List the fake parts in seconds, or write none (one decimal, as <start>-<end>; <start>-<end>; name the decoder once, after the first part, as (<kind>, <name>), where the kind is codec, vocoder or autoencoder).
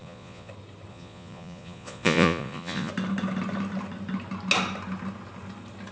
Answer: 0.0-0.5 (vocoder, Vocos); 0.9-2.9